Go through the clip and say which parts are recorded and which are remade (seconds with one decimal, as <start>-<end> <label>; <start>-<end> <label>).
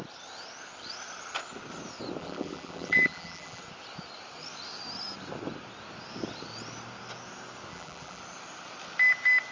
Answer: 0.0-2.2 recorded; 2.2-3.6 remade; 3.6-7.7 recorded; 7.7-8.2 remade; 8.2-9.5 recorded